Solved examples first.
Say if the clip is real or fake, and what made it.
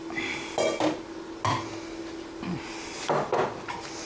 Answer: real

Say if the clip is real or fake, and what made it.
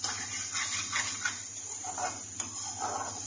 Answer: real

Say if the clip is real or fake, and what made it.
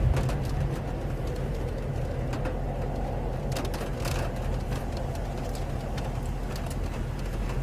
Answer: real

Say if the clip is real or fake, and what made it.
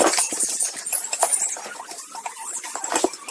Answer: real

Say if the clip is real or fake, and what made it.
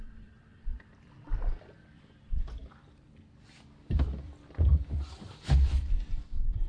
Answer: fake, vocoder, BigVGAN v2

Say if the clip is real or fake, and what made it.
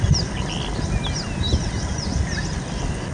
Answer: real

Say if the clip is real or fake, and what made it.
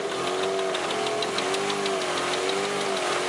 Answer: real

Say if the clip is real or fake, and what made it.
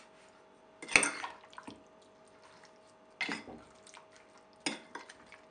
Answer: real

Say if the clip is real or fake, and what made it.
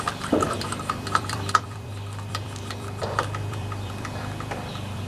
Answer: fake, vocoder, BigVGAN v2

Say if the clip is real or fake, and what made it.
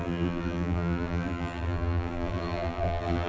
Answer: fake, vocoder, BigVGAN v2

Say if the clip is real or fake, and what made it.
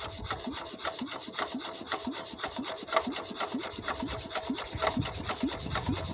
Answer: fake, vocoder, BigVGAN v2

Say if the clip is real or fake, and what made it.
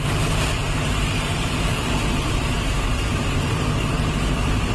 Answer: fake, vocoder, BigVGAN v2